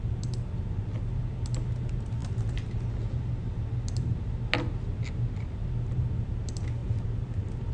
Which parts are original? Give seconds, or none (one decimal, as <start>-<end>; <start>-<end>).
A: 0.0-7.7